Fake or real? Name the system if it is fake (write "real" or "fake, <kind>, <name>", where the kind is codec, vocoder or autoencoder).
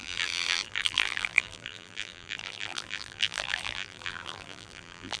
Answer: fake, vocoder, BigVGAN v2